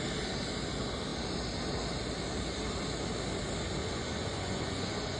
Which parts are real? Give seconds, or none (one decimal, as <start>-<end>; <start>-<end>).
0.0-3.8